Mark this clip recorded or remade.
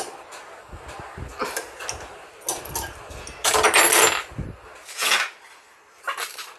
recorded